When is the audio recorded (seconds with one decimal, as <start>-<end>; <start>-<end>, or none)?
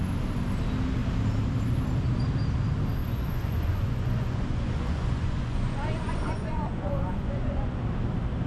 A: 0.0-3.0; 7.8-8.5